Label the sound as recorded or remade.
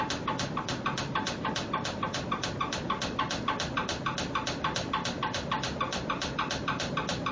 recorded